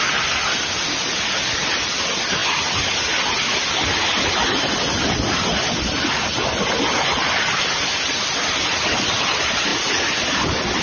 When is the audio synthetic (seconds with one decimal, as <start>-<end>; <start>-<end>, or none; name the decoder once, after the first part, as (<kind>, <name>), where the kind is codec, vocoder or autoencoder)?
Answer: none